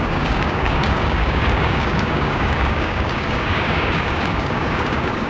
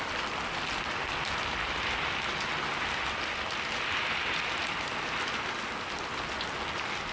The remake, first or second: first